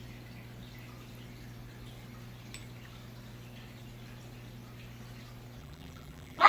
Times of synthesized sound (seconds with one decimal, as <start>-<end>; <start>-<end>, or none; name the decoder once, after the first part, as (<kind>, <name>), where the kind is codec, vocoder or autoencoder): 5.6-6.5 (vocoder, BigVGAN v2)